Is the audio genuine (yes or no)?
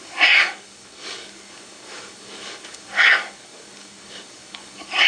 no